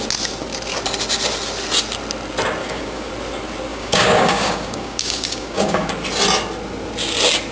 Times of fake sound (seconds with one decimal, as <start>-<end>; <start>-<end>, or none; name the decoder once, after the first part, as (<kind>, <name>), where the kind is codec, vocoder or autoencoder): 2.6-3.1 (codec, DAC); 3.7-5.9